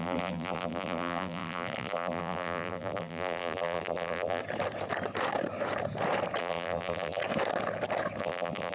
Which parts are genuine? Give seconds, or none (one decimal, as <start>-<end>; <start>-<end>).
4.4-6.4; 7.2-8.2